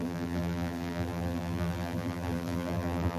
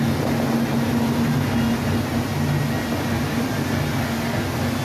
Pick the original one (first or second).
second